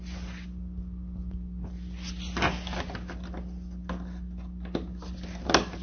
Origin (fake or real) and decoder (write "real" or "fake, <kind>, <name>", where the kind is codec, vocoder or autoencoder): real